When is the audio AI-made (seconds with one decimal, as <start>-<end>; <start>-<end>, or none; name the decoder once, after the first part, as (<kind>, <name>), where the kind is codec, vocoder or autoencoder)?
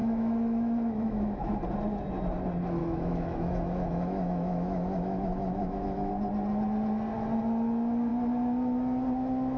0.0-1.6 (autoencoder, DAC-VAE); 2.8-6.1